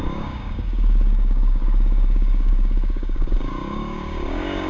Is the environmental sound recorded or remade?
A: remade